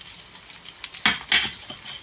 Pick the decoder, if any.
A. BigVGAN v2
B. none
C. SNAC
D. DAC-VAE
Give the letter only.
B